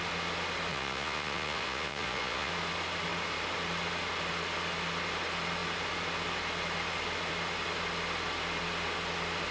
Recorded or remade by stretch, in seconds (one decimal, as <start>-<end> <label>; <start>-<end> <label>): 0.0-0.7 recorded; 0.7-2.5 remade; 2.5-9.5 recorded